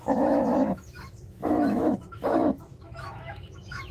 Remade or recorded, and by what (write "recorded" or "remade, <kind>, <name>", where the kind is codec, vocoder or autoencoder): remade, autoencoder, DAC-VAE